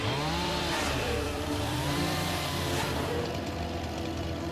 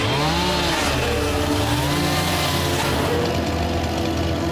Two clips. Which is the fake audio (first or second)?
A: first